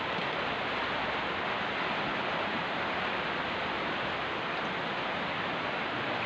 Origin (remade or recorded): recorded